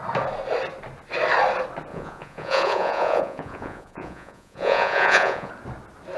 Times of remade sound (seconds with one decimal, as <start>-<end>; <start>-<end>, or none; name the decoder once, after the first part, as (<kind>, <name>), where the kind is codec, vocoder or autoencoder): 1.9-5.5 (vocoder, Vocos)